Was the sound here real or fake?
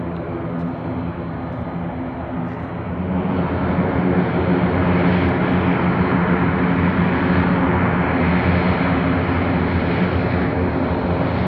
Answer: real